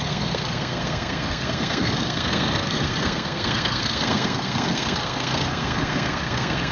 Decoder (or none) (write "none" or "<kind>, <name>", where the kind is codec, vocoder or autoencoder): codec, SNAC